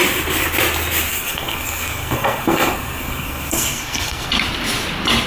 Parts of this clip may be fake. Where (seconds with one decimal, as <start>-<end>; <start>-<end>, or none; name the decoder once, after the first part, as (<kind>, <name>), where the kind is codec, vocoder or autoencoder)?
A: 1.1-4.3 (codec, SNAC)